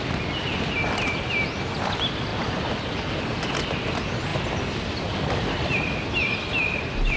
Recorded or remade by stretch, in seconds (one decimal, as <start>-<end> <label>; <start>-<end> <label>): 0.0-7.2 recorded